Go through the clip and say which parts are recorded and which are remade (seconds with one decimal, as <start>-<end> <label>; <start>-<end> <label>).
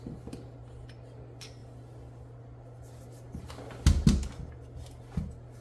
0.0-5.6 recorded